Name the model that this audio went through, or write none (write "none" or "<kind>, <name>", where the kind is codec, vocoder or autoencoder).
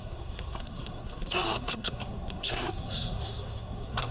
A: codec, SNAC